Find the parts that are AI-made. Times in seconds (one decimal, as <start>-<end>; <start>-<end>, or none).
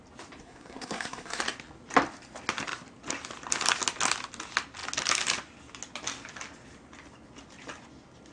0.4-1.4